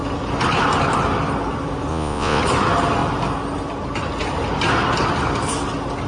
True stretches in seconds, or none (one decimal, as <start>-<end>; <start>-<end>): 0.0-1.9; 2.4-6.1

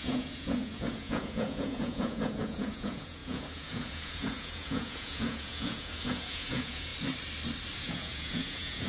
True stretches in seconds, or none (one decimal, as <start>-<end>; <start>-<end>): 6.9-7.8